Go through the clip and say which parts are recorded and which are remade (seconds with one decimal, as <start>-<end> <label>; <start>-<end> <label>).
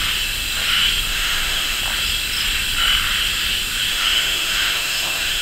0.0-1.1 recorded; 1.1-1.8 remade; 1.8-3.9 recorded; 3.9-5.4 remade